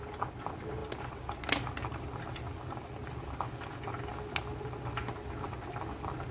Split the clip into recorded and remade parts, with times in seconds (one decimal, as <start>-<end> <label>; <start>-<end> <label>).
0.0-6.3 recorded